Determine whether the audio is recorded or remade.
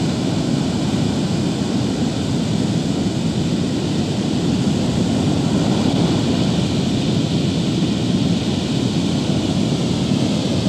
recorded